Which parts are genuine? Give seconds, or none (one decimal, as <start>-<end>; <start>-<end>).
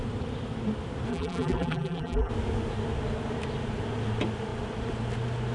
0.0-1.1; 2.3-5.5